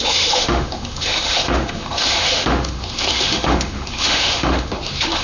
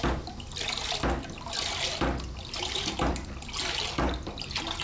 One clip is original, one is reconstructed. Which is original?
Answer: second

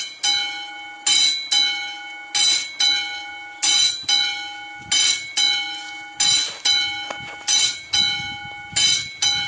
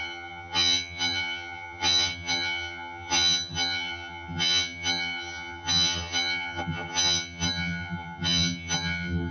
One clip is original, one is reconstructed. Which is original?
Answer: first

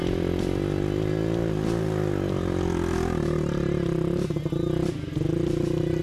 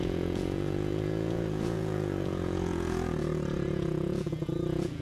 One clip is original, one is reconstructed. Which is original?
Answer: first